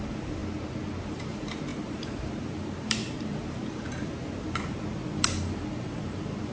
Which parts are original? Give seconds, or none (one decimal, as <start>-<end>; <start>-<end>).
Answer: 0.4-1.0